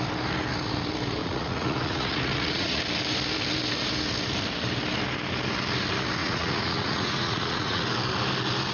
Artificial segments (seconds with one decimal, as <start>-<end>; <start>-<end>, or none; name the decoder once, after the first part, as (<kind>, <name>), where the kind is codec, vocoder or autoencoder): 1.2-2.8 (vocoder, Vocos); 6.2-7.8